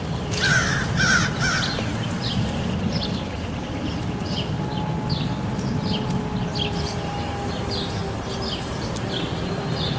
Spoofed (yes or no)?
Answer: no